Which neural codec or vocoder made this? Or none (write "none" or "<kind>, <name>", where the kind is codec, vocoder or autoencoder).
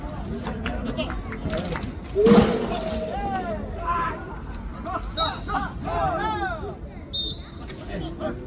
none